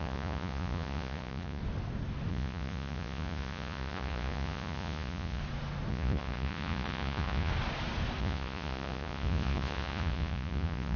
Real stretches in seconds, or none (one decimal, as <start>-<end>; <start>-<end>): 1.6-2.3; 5.4-5.9; 7.5-8.2